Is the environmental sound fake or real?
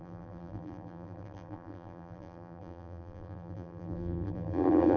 fake